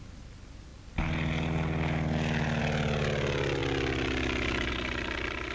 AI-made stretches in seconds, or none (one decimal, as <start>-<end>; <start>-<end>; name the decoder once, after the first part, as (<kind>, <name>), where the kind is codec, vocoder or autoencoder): none